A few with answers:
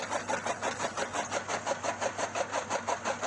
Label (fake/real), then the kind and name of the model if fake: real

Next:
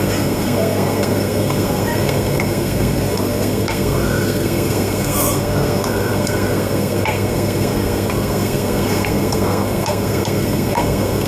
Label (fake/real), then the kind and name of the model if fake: fake, codec, SNAC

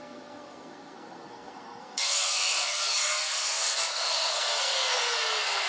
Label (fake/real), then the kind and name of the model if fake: fake, codec, SNAC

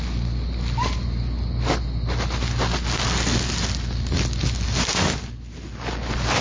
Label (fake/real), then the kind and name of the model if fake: real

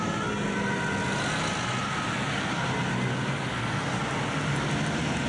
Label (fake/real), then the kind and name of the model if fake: real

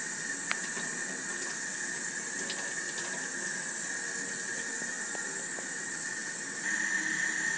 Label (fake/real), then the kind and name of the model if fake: real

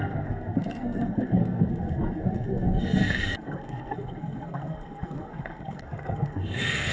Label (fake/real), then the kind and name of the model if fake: fake, codec, SNAC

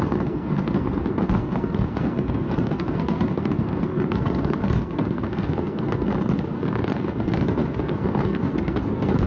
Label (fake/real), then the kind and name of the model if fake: fake, codec, SNAC